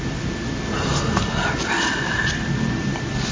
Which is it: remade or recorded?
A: recorded